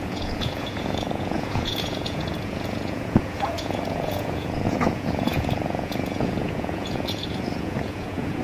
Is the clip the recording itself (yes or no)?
no